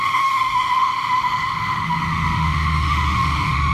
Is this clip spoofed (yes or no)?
yes